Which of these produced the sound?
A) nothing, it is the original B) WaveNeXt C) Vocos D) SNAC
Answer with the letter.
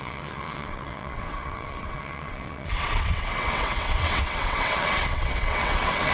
B